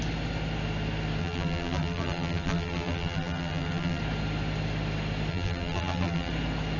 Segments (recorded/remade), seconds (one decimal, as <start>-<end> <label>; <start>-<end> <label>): 0.0-1.2 recorded; 1.2-4.0 remade; 4.0-5.3 recorded; 5.3-6.3 remade; 6.3-6.8 recorded